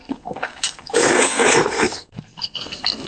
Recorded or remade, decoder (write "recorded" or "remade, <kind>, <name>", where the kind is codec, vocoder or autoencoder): remade, codec, SNAC